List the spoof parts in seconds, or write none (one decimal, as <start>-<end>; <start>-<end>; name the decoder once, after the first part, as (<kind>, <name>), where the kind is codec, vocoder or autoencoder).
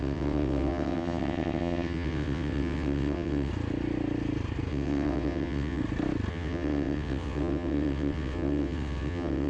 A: 0.0-3.5 (vocoder, WaveNeXt); 4.7-5.8; 6.3-9.5